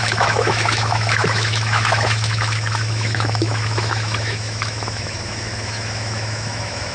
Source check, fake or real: fake